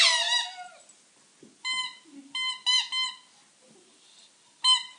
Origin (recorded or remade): recorded